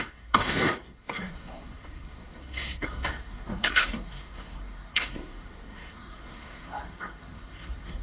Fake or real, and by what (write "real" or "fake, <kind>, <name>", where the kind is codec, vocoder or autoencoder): fake, codec, SNAC